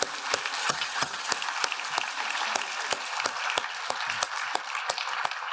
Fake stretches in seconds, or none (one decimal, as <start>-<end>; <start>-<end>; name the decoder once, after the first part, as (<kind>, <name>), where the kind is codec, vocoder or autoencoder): 0.6-1.3 (vocoder, HiFi-GAN)